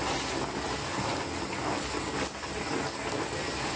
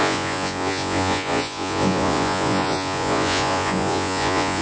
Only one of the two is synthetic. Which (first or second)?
second